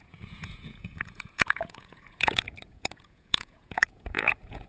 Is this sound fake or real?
fake